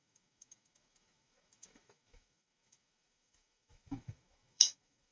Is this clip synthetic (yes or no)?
yes